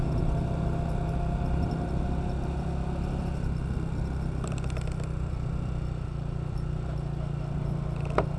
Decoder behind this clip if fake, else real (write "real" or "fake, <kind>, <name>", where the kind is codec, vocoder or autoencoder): real